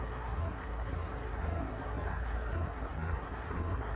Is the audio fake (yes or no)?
yes